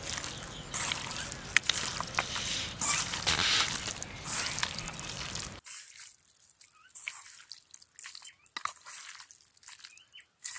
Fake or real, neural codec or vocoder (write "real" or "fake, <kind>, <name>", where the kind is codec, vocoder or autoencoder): real